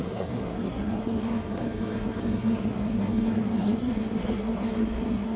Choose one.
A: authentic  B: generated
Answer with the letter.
B